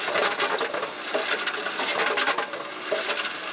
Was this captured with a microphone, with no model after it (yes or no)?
yes